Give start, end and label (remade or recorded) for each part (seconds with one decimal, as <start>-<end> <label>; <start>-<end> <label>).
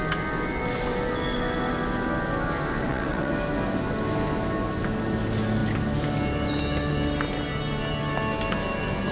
0.0-2.8 recorded; 2.8-3.3 remade; 3.3-9.1 recorded